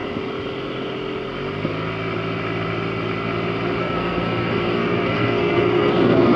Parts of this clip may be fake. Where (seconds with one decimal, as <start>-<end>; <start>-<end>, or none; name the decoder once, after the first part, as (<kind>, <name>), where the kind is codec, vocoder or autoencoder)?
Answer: 3.8-6.4 (codec, SNAC)